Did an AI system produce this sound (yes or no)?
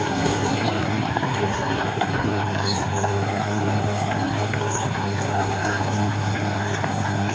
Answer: yes